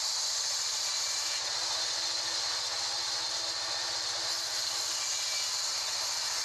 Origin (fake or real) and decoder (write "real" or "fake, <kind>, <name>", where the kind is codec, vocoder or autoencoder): real